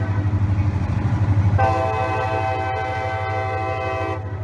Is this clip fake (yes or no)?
no